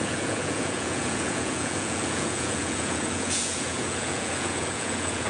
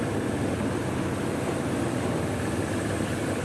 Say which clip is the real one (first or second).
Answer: second